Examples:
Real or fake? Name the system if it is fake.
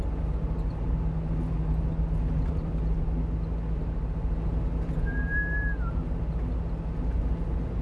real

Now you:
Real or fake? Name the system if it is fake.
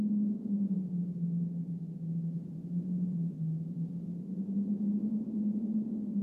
real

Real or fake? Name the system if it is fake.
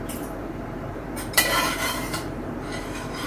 fake, vocoder, BigVGAN v2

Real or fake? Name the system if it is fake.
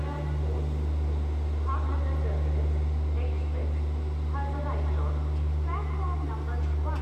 real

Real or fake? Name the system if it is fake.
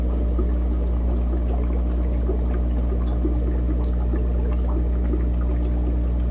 real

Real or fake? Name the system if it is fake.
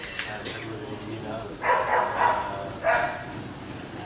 real